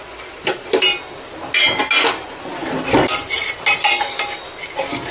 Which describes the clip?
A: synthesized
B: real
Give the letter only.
B